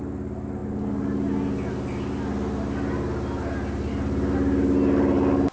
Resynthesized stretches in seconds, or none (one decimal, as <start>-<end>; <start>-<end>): none